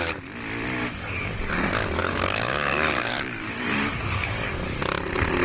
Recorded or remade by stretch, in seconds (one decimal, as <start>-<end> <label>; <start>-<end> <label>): 0.0-0.8 recorded; 0.8-1.5 remade; 1.5-2.0 recorded; 2.0-4.8 remade; 4.8-5.4 recorded